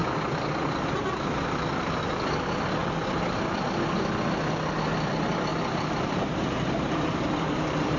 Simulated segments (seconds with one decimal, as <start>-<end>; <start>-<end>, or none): 2.8-3.8; 5.5-7.6

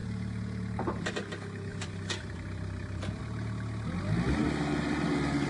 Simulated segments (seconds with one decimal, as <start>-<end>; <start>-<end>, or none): 0.0-1.1; 1.7-3.2

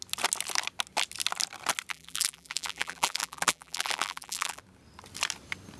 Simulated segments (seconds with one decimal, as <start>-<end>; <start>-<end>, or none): 1.9-4.6

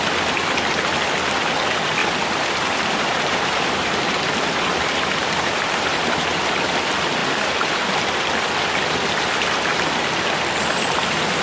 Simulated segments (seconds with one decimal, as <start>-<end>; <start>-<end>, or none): 2.0-3.9; 5.2-6.4

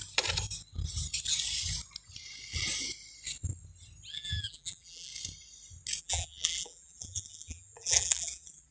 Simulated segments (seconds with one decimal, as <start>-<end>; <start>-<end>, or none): 4.1-5.1; 6.0-8.7

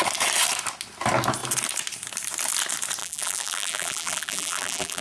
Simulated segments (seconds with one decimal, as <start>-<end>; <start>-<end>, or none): 3.0-5.0

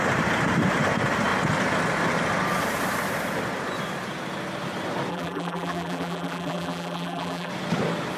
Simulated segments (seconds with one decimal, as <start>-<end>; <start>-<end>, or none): 5.1-7.5

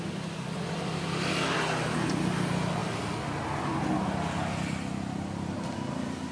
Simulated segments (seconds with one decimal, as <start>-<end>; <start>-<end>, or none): none